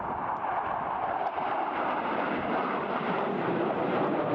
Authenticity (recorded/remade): recorded